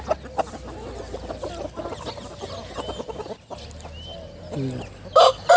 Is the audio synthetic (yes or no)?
no